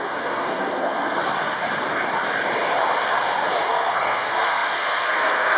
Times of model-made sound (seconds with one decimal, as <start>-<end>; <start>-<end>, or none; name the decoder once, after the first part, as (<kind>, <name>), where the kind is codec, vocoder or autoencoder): 0.0-1.2 (codec, SNAC); 3.7-5.6